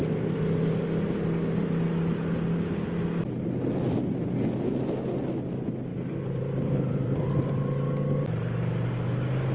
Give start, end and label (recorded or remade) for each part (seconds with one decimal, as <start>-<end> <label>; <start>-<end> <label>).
0.0-5.9 recorded; 5.9-7.6 remade; 7.6-9.5 recorded